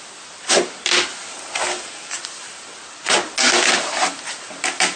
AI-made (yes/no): no